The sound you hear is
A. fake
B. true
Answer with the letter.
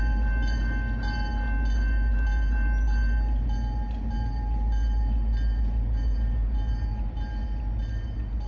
B